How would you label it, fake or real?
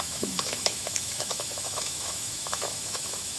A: fake